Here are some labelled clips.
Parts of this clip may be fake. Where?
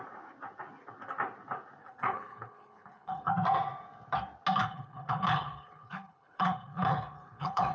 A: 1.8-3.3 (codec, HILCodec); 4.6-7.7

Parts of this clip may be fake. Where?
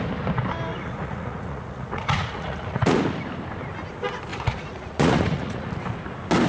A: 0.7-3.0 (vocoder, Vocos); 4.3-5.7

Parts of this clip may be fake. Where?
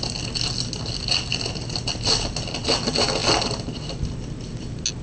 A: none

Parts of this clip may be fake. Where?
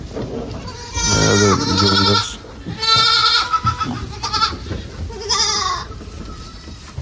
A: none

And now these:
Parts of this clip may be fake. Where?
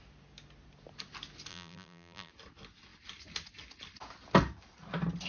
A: 1.5-2.3 (vocoder, BigVGAN v2)